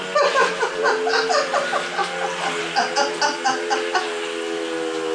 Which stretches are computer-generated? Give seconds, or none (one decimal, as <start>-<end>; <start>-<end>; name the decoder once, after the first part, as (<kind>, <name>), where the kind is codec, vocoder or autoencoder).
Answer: 0.4-1.3 (vocoder, BigVGAN v2)